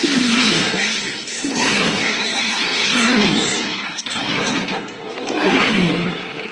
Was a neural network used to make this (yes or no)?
yes